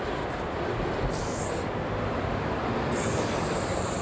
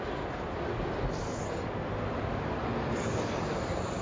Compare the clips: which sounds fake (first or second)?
first